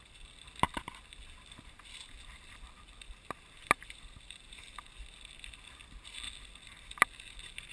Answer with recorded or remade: recorded